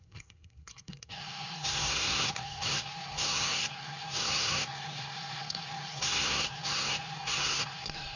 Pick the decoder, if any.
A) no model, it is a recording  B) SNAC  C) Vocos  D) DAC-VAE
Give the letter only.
B